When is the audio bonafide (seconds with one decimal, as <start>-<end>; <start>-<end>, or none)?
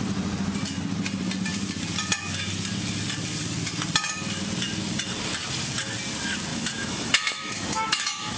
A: 0.0-6.5